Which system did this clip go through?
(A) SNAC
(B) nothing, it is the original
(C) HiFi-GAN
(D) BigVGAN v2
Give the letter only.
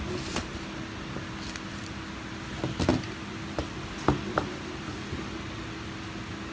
B